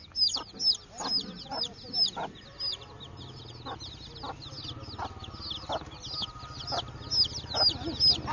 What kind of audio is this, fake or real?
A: real